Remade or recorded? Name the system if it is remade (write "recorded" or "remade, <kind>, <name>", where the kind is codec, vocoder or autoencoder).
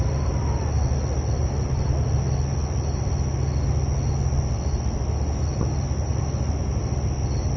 recorded